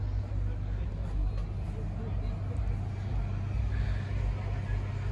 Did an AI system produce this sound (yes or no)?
no